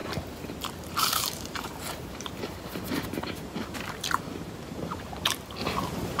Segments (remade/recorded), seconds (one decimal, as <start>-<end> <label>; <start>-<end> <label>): 0.0-6.2 remade